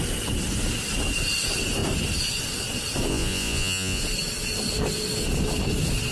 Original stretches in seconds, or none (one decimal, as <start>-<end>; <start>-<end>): 0.0-3.1; 4.0-6.1